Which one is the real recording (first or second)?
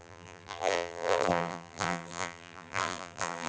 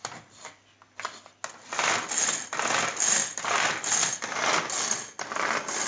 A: second